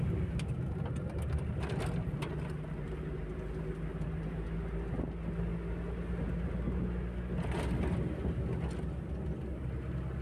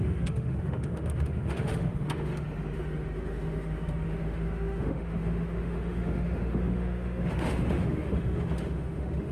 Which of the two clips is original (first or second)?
first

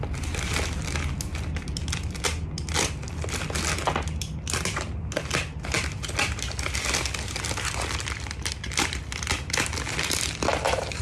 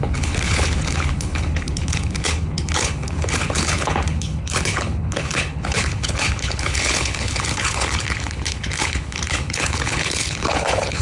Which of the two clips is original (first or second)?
first